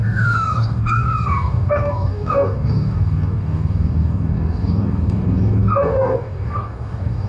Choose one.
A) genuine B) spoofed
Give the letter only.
B